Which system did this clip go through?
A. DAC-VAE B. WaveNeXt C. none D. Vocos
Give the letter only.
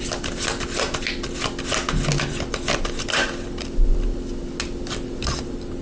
C